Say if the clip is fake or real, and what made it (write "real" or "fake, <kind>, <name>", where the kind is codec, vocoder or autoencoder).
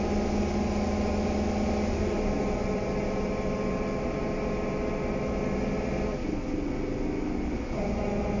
real